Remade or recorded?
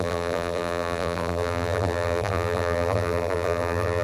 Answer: remade